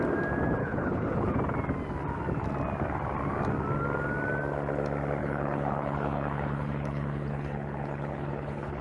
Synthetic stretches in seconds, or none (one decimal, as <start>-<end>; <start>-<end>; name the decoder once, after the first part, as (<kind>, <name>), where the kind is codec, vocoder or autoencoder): 0.6-1.3 (codec, HILCodec); 5.2-8.8